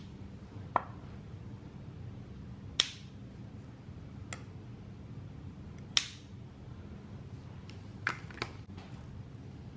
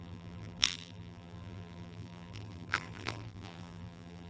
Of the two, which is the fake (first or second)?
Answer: second